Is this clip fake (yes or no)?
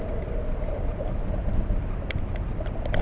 no